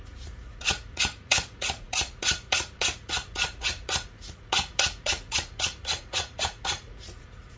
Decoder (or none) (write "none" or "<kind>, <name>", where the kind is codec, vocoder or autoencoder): vocoder, Vocos